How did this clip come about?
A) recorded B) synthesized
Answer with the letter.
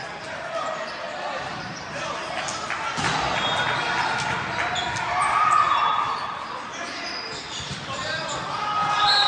A